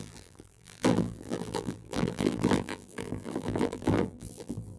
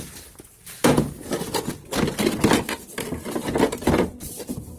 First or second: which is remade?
first